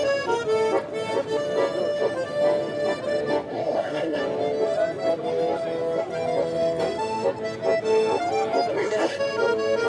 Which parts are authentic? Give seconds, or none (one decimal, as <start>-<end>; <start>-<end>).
0.0-3.5; 4.2-8.7; 9.2-9.9